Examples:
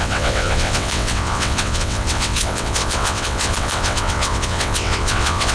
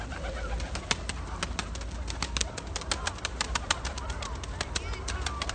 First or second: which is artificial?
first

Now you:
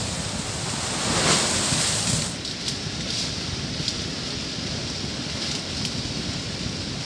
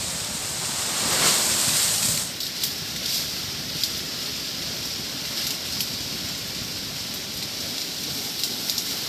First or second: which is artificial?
second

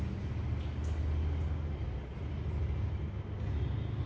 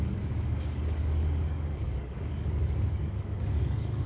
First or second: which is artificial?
second